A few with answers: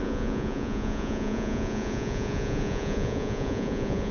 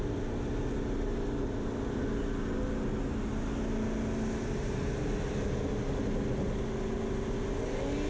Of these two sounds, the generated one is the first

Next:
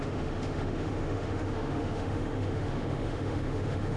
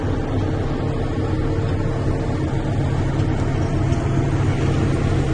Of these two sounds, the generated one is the first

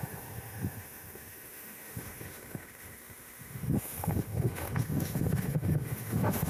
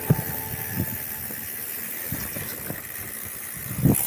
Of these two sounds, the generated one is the first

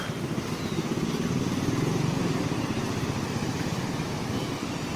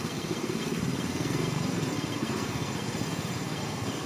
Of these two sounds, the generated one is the second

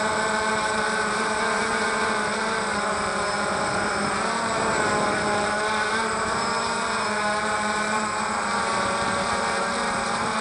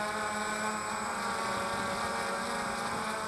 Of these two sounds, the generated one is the first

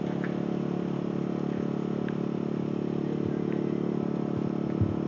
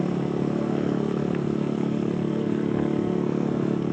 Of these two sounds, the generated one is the second